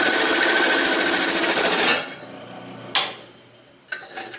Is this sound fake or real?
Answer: real